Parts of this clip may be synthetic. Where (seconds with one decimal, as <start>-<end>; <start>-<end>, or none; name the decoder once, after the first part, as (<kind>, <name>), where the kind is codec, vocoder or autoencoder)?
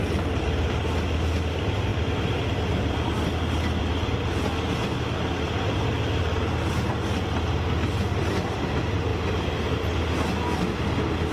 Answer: none